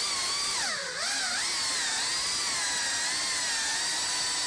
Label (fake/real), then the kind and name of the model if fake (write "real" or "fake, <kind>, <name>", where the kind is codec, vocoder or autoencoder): real